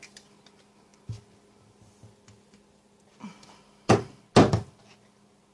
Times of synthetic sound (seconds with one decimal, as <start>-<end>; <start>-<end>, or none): none